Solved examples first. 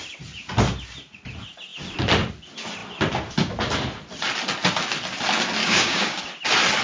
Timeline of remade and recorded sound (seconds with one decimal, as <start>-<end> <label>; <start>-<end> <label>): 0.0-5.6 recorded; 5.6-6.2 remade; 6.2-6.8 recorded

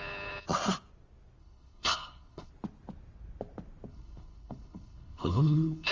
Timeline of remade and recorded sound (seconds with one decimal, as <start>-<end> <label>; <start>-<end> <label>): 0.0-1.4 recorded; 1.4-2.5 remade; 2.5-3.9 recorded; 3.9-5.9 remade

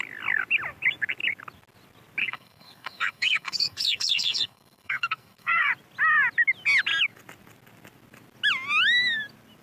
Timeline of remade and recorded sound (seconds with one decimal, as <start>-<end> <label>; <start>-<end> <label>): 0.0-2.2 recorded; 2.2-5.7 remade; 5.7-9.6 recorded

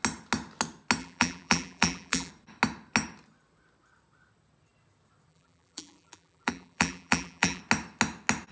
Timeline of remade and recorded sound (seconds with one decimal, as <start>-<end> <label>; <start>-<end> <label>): 0.0-1.0 recorded; 1.0-2.3 remade; 2.3-5.3 recorded; 5.3-7.6 remade; 7.6-8.5 recorded